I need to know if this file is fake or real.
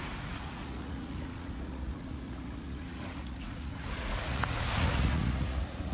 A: fake